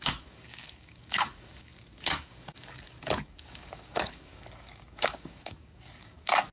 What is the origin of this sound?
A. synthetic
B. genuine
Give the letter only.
A